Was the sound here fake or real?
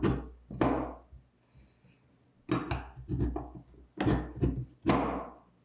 real